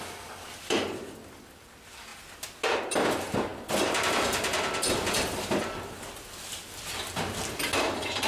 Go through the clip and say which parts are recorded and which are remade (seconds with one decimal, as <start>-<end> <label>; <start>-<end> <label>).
0.0-2.1 remade; 2.1-2.7 recorded; 2.7-8.3 remade